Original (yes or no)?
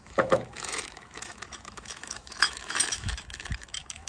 no